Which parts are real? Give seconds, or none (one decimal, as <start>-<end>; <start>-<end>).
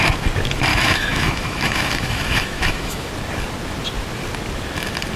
0.0-0.7; 3.1-5.2